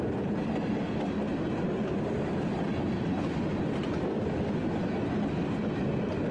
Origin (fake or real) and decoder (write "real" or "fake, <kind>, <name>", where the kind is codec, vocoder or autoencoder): real